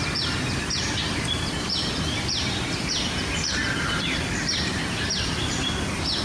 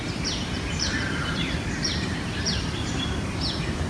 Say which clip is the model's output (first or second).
second